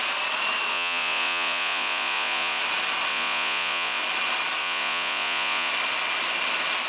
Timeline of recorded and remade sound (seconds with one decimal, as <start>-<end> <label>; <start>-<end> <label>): 0.0-0.7 recorded; 0.7-2.6 remade; 2.6-3.1 recorded; 3.1-4.0 remade; 4.0-4.6 recorded; 4.6-5.7 remade; 5.7-6.9 recorded